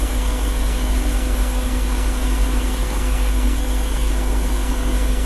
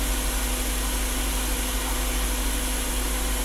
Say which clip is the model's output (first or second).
first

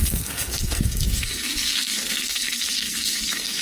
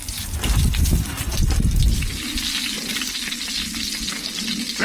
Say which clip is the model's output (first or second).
first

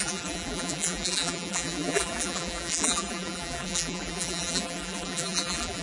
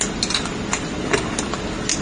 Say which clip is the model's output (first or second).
first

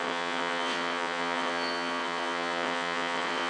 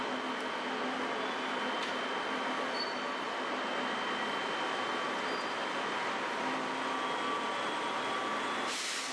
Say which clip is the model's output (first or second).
first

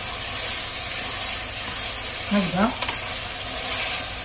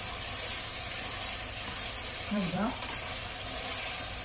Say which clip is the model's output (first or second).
second